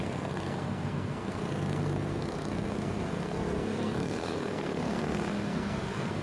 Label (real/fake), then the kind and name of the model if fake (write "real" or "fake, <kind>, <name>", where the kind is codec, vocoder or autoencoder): fake, codec, SNAC